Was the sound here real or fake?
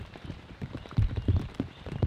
fake